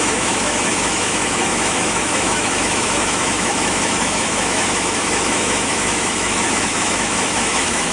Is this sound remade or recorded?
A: remade